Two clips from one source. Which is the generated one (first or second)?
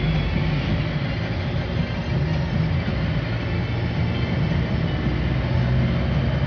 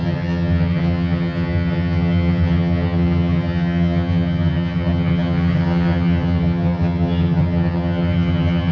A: second